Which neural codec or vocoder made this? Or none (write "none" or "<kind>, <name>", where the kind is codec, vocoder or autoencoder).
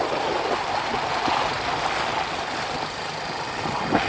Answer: none